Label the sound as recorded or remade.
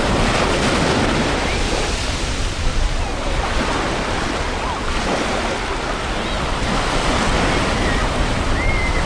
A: recorded